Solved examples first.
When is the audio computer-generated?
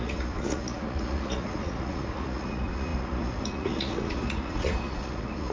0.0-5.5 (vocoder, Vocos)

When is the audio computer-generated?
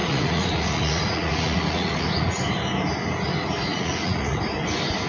0.0-2.4 (vocoder, Vocos); 3.7-4.4